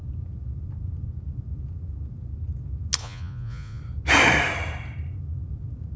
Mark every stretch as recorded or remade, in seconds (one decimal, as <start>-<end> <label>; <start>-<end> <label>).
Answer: 0.0-3.0 recorded; 3.0-3.8 remade; 3.8-6.0 recorded